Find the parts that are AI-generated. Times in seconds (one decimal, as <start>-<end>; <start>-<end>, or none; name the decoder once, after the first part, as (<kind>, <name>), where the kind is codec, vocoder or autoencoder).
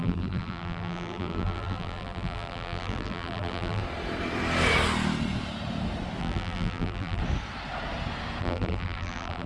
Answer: 0.0-3.8 (vocoder, BigVGAN v2); 6.2-7.2; 8.4-9.5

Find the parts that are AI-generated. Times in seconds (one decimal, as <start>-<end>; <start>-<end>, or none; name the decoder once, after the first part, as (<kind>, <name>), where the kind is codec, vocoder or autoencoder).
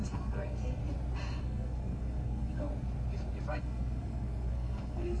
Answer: 0.0-0.8 (codec, SNAC); 1.4-2.7; 3.5-5.2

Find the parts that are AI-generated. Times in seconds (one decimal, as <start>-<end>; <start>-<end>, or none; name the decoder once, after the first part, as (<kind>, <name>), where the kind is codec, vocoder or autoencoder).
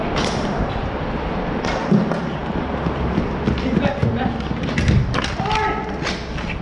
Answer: none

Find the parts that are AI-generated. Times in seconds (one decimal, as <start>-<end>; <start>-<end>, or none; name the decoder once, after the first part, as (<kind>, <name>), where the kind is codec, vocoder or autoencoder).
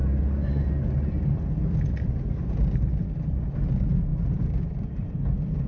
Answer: none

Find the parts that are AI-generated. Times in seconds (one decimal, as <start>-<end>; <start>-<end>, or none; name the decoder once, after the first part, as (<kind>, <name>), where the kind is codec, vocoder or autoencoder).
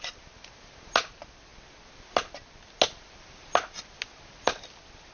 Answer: none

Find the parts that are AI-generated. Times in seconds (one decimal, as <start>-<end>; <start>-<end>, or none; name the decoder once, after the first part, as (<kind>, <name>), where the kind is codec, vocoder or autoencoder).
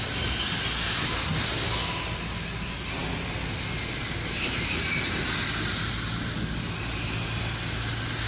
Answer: none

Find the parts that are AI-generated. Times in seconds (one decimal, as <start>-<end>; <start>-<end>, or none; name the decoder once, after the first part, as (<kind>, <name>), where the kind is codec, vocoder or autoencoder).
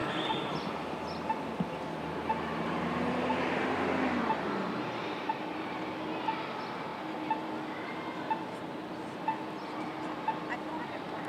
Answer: none